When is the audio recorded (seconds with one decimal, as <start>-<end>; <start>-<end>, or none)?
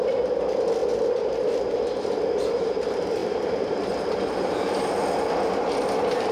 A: 0.0-3.2; 5.7-6.3